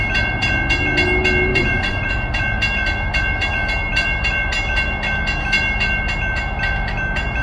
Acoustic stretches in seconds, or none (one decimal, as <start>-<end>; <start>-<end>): 0.0-1.5; 2.1-7.4